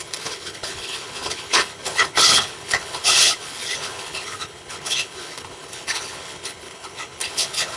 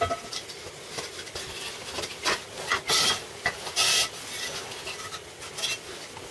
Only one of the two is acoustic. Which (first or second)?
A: second